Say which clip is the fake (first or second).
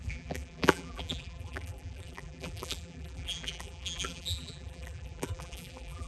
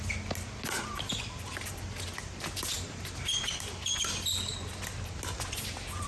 first